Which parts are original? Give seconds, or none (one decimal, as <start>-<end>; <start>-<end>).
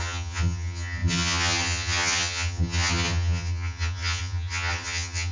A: none